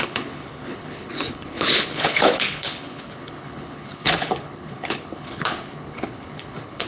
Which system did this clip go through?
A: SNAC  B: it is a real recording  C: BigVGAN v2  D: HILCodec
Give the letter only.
D